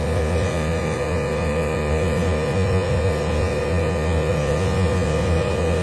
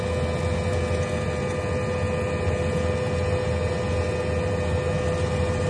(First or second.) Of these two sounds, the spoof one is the first